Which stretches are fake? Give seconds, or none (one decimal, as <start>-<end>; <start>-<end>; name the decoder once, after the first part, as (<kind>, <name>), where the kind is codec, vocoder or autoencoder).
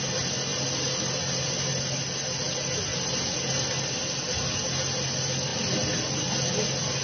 none